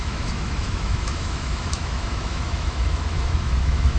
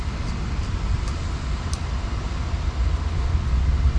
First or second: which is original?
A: second